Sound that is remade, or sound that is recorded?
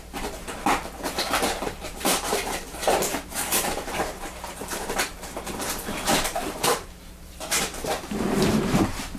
remade